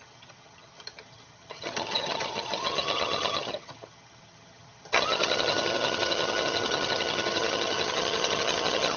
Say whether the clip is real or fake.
fake